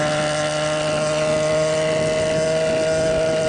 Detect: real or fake real